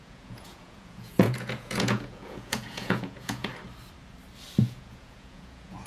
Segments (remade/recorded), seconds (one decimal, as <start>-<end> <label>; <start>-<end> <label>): 0.0-3.5 remade; 3.5-4.6 recorded; 4.6-5.9 remade